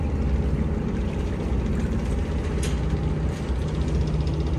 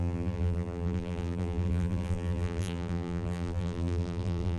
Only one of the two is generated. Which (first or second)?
second